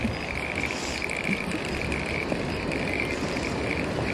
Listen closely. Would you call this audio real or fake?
real